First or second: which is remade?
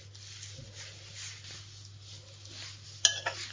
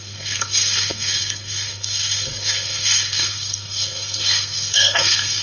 second